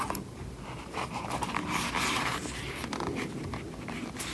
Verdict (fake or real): real